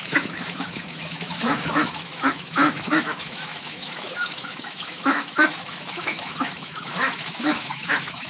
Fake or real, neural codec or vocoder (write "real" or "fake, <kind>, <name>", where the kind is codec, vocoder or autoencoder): fake, autoencoder, DAC-VAE